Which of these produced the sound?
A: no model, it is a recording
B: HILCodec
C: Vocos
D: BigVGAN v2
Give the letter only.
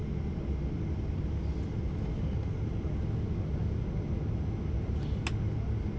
A